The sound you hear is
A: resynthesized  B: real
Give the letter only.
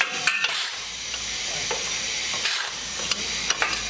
A